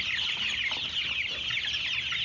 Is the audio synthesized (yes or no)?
no